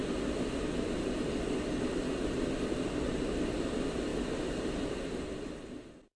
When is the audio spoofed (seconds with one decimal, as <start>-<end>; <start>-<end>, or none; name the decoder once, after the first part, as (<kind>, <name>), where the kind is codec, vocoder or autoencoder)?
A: none